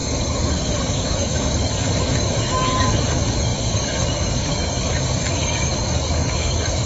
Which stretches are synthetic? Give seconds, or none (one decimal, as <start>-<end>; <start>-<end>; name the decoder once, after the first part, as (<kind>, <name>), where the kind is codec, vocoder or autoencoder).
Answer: 0.0-6.9 (codec, DAC)